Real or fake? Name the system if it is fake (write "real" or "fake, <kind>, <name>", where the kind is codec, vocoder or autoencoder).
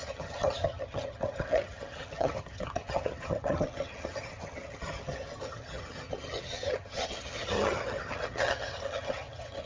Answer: fake, vocoder, HiFi-GAN